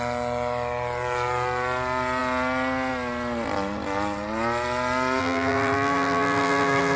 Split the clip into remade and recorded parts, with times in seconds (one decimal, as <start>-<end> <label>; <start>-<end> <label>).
0.0-5.2 recorded; 5.2-7.0 remade